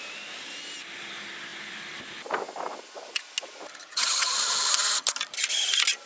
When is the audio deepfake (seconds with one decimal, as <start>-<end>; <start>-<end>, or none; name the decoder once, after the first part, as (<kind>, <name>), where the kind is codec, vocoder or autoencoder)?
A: 3.8-4.3 (vocoder, HiFi-GAN)